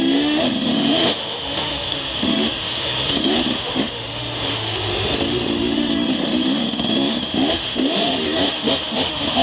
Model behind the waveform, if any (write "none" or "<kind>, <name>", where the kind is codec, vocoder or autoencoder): autoencoder, DAC-VAE